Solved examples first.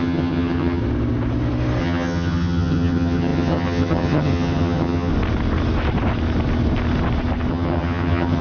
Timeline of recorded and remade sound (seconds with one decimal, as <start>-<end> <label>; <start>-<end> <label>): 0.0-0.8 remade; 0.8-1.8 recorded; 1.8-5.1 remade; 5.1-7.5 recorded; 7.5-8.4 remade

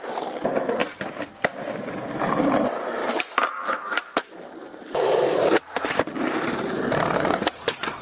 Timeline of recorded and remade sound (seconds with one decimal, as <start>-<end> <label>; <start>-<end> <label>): 0.0-8.0 remade

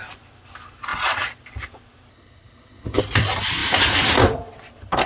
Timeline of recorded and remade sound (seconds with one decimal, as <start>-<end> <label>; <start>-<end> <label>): 0.0-2.1 recorded; 2.1-3.0 remade; 3.0-5.1 recorded

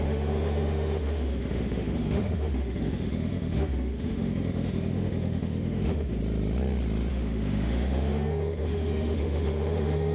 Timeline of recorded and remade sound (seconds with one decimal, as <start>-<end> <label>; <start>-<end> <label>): 0.0-6.2 remade; 6.2-7.1 recorded; 7.1-10.1 remade

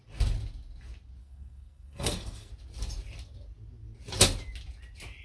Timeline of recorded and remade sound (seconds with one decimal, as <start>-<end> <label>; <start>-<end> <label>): 0.0-1.2 recorded; 1.2-2.5 remade; 2.5-5.2 recorded

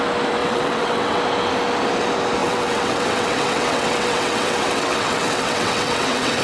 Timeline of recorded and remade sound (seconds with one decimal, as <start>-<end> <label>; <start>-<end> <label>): 0.0-0.4 recorded; 0.4-1.2 remade; 1.2-2.4 recorded; 2.4-6.4 remade